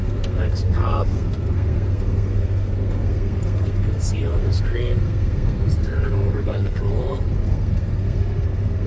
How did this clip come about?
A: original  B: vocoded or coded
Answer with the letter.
B